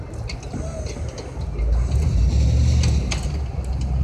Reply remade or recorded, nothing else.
recorded